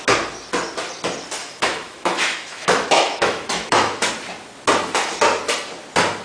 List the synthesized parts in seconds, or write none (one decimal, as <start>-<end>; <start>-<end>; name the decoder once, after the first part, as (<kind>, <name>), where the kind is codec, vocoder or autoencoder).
1.4-4.1 (autoencoder, DAC-VAE)